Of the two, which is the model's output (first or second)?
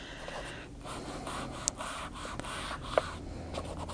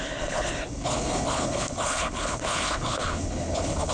second